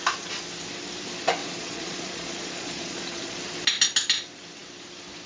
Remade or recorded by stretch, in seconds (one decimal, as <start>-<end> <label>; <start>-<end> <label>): 0.0-1.4 recorded; 1.4-3.4 remade; 3.4-5.3 recorded